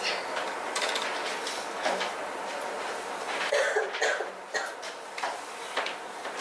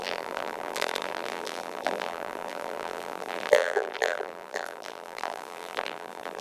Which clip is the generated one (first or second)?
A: second